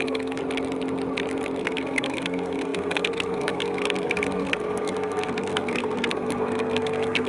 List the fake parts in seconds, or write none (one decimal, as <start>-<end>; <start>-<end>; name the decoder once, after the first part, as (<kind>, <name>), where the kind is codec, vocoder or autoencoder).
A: 0.0-0.4 (codec, SNAC); 1.6-7.3